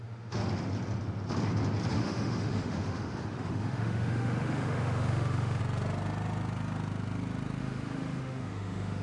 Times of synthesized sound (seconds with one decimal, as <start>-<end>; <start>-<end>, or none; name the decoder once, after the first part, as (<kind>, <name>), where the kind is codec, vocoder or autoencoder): 0.0-0.4 (autoencoder, DAC-VAE); 1.9-5.6; 7.6-9.0